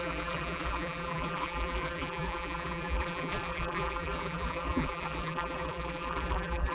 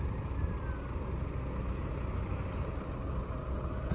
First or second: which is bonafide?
second